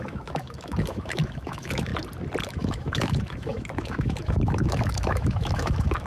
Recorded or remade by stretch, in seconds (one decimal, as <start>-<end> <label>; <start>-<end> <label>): 0.0-1.9 remade; 1.9-2.4 recorded; 2.4-6.1 remade